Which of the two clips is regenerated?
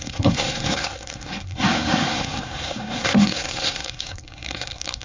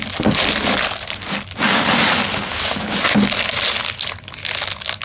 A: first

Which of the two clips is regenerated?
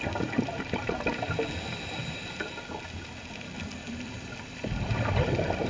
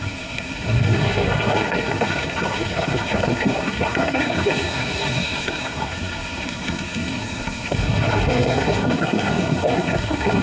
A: second